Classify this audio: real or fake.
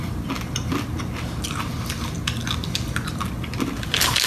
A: real